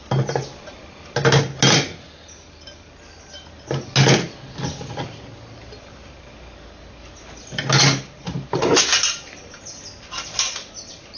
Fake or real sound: real